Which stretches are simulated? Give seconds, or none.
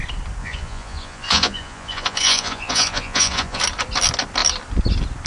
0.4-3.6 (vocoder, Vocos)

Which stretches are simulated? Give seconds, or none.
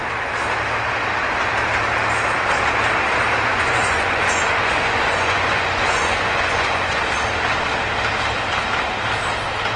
3.5-7.0 (vocoder, Vocos)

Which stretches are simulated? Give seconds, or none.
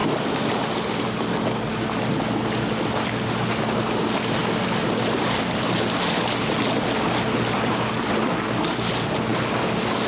none